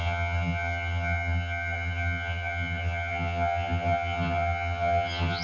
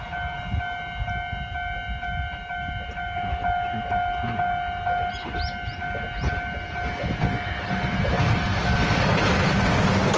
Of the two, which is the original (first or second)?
second